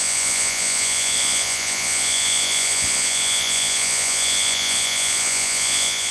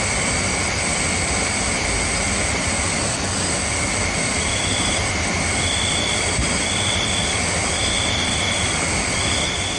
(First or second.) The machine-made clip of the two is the first